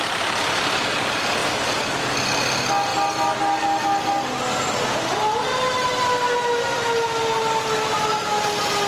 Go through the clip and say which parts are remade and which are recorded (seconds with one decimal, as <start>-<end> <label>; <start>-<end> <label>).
0.0-1.4 recorded; 1.4-2.0 remade; 2.0-8.9 recorded